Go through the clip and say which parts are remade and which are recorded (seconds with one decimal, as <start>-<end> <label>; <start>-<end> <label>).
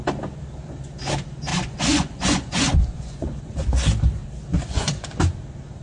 0.0-1.5 recorded; 1.5-3.4 remade; 3.4-4.5 recorded; 4.5-5.2 remade; 5.2-5.8 recorded